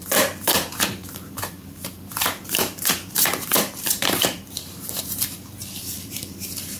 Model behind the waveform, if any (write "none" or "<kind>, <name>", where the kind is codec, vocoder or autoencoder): vocoder, BigVGAN v2